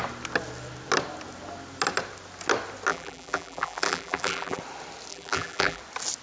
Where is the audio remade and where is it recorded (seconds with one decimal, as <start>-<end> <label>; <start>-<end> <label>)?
0.0-2.9 recorded; 2.9-4.6 remade; 4.6-5.1 recorded; 5.1-5.8 remade; 5.8-6.2 recorded